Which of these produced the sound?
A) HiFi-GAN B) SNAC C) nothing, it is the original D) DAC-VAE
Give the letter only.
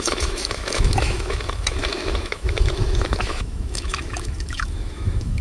D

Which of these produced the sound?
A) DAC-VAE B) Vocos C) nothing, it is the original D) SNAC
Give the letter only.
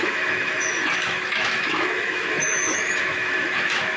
A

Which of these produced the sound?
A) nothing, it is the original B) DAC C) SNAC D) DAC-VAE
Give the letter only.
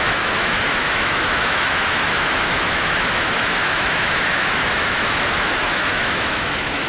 D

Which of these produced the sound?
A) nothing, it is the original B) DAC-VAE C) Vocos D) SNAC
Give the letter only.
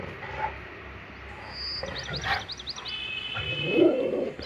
A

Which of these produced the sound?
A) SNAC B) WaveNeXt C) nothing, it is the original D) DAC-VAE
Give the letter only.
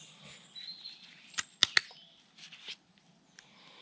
C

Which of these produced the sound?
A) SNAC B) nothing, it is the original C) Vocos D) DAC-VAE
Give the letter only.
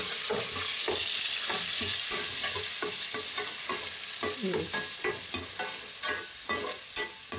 B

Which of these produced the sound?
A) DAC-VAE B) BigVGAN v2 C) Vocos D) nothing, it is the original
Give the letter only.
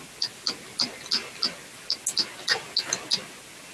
D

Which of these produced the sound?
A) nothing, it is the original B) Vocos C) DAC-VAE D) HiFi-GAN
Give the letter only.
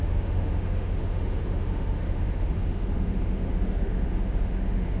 C